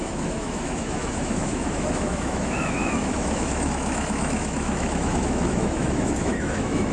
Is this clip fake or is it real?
fake